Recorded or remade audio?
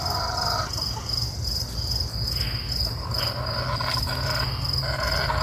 recorded